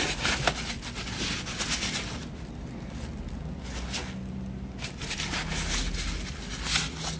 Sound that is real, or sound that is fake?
real